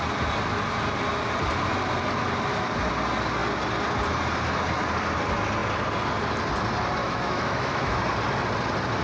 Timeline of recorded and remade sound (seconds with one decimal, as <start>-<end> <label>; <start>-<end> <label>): 0.0-7.0 recorded; 7.0-8.0 remade; 8.0-9.0 recorded